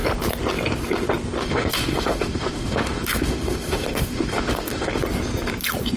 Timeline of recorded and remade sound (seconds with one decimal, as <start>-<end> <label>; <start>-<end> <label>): 0.0-1.4 recorded; 1.4-5.0 remade; 5.0-6.0 recorded